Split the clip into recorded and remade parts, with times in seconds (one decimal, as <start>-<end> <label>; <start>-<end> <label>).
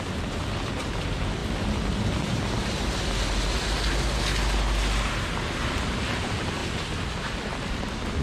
0.0-8.2 recorded